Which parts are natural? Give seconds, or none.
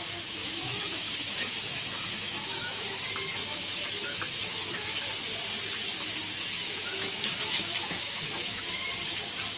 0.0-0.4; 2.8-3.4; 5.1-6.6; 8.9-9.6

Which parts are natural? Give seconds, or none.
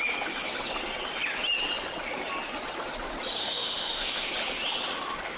0.0-3.4; 4.3-5.4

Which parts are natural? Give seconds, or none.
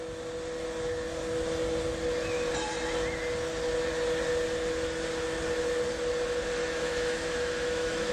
0.0-6.6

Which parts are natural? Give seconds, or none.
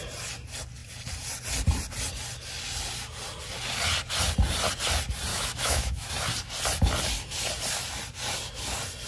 0.0-5.3; 6.1-9.1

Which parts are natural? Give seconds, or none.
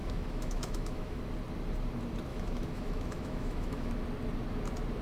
1.2-2.3; 3.9-5.0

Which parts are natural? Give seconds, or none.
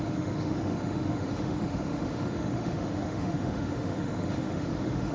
none